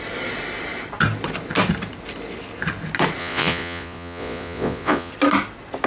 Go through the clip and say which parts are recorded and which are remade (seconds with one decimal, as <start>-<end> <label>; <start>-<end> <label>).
0.0-3.2 recorded; 3.2-5.1 remade; 5.1-5.9 recorded